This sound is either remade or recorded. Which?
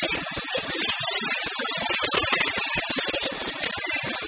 recorded